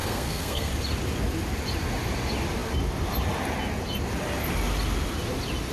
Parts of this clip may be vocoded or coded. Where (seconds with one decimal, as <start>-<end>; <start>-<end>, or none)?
0.0-0.7